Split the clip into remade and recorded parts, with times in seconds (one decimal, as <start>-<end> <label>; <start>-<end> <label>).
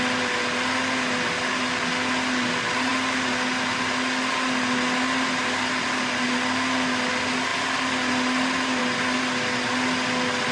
0.0-10.5 recorded